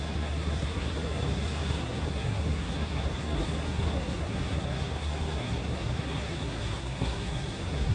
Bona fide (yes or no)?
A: no